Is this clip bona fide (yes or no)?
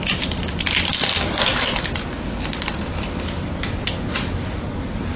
yes